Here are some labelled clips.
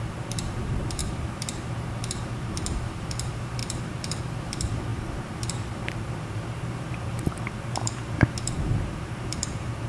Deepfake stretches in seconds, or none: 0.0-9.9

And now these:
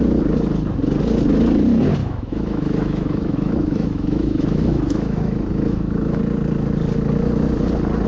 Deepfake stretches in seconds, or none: 2.0-6.2

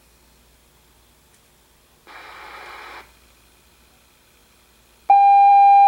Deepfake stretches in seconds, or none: none

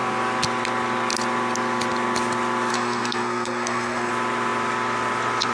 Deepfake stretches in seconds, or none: 2.7-4.1

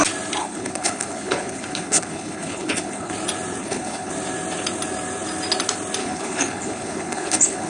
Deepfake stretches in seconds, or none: 0.4-3.1; 3.6-4.1; 6.0-7.7

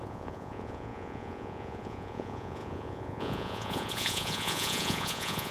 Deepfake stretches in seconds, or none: 0.0-5.5